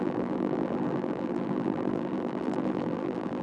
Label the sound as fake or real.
fake